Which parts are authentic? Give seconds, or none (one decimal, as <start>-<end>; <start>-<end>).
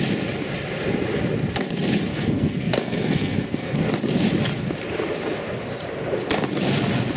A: 0.0-2.1; 3.9-7.2